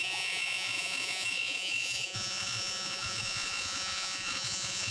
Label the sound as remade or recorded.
remade